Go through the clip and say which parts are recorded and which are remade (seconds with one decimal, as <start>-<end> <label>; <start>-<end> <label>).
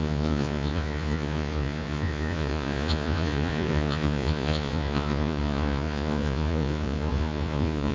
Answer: 0.0-7.9 remade